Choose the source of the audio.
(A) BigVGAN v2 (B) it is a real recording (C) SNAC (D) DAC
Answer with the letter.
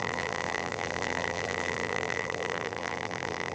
A